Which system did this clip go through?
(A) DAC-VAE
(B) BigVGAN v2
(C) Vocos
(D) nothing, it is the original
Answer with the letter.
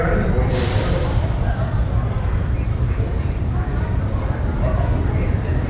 B